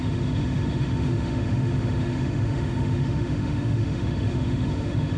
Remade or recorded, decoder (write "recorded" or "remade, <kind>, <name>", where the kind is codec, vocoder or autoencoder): remade, autoencoder, DAC-VAE